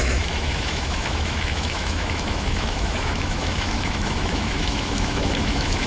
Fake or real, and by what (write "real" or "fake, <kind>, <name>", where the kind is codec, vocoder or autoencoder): fake, autoencoder, DAC-VAE